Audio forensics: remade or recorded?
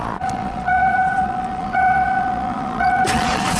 remade